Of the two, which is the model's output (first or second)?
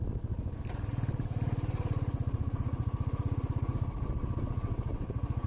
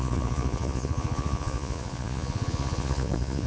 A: second